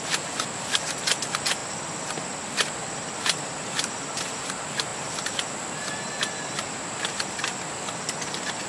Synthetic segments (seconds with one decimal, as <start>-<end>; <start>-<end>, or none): none